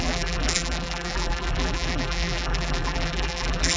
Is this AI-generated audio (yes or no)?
yes